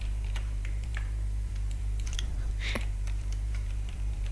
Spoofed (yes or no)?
yes